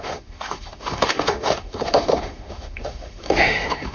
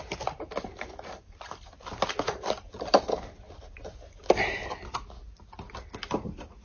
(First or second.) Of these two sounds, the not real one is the first